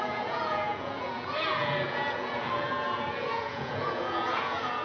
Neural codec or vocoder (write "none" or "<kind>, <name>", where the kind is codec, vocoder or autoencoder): vocoder, Vocos